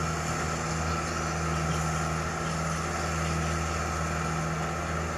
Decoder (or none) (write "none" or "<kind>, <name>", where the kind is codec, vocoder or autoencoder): none